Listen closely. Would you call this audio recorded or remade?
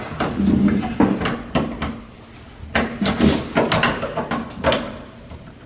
recorded